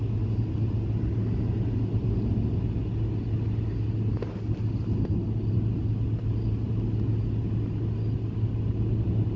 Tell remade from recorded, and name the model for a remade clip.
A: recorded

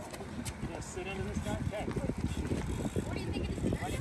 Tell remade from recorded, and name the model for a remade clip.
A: recorded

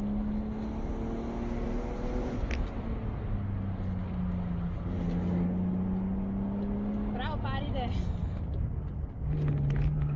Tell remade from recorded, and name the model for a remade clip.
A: recorded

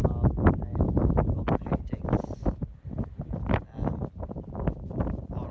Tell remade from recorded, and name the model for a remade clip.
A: recorded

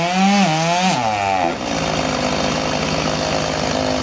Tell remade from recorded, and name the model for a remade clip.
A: recorded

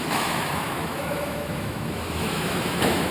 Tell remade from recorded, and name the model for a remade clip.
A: remade, autoencoder, DAC-VAE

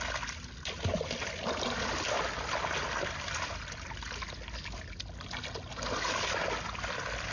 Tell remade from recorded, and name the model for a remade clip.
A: recorded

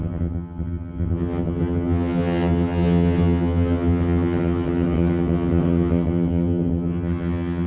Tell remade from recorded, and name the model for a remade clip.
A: remade, vocoder, HiFi-GAN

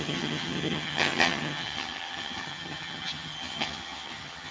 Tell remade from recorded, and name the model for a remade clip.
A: remade, vocoder, HiFi-GAN